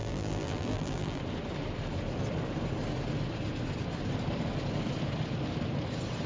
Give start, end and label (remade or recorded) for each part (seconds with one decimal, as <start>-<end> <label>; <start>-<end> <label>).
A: 0.0-1.2 remade; 1.2-6.3 recorded